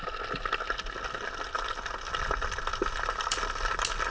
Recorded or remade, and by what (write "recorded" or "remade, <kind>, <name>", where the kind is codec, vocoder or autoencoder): recorded